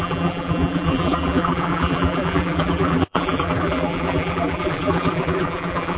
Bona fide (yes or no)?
no